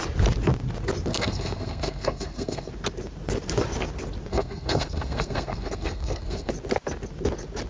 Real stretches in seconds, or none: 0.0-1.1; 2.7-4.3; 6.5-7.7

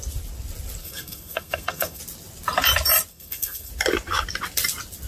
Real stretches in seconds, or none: 0.0-0.8; 2.0-3.1; 3.7-5.1

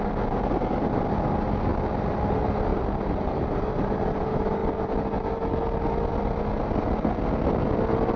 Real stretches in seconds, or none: 0.0-8.2

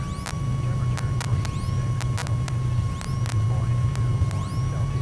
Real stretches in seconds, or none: 0.0-5.0

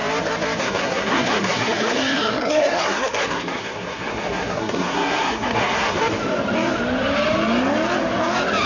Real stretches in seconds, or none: 0.0-0.6; 6.0-8.7

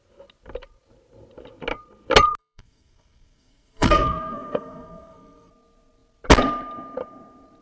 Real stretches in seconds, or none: 0.0-2.4; 5.5-7.6

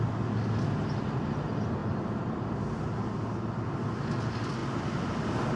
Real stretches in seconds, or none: 0.0-5.6